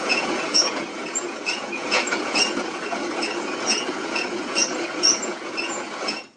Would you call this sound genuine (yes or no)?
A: no